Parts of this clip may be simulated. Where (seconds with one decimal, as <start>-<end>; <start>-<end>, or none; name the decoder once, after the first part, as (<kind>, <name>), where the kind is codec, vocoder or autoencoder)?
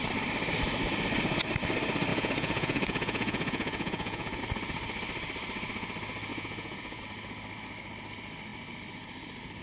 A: 2.1-4.4 (vocoder, Vocos); 6.3-7.0